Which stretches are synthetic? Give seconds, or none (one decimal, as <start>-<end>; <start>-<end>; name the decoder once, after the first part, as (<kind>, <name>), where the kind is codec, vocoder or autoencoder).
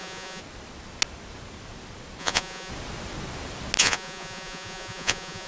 0.0-0.4 (vocoder, Vocos); 2.2-2.7; 3.8-5.5